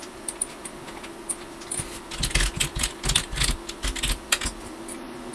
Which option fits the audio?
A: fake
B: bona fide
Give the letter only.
B